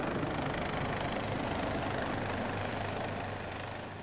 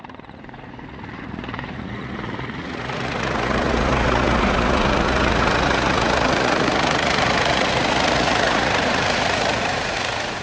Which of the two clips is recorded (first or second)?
first